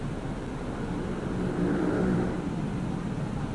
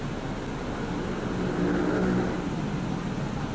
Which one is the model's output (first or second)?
first